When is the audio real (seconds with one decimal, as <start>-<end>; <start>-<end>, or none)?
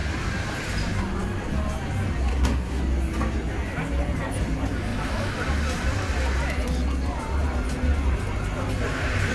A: 0.0-2.3; 2.8-9.3